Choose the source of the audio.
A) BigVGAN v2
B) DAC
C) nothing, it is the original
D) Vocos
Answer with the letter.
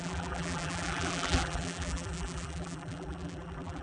A